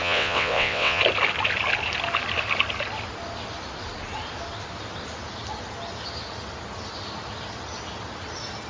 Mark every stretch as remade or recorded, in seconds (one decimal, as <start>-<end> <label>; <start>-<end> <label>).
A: 0.0-1.0 remade; 1.0-8.7 recorded